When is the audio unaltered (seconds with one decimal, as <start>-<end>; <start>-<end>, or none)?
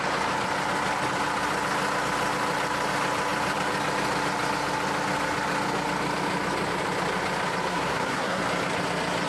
0.0-7.7; 8.4-9.3